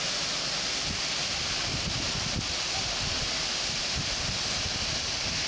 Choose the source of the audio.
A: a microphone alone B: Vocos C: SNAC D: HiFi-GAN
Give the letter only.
A